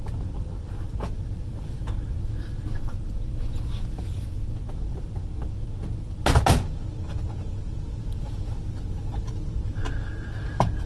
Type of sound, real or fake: real